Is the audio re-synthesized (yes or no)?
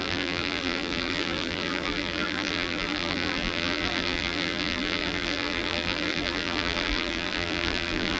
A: yes